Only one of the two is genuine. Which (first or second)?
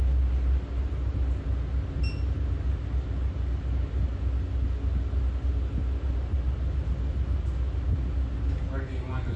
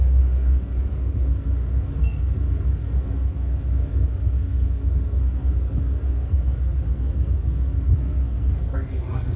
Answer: first